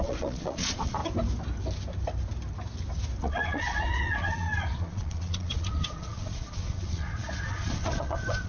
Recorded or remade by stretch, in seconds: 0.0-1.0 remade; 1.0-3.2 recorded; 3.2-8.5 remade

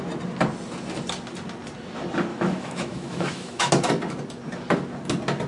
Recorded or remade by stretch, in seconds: 0.0-2.3 recorded; 2.3-3.7 remade; 3.7-5.5 recorded

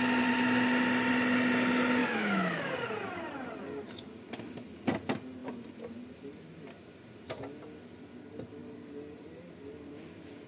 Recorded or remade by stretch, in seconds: 0.0-2.0 recorded; 2.0-2.6 remade; 2.6-10.5 recorded

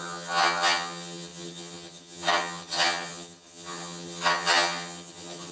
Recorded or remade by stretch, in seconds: 0.0-5.5 remade